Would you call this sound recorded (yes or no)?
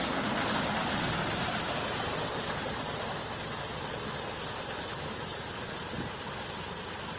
yes